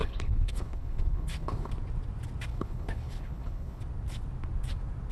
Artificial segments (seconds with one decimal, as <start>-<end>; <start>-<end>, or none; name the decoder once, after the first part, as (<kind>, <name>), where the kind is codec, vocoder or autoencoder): 0.0-1.7 (codec, HILCodec); 2.5-3.8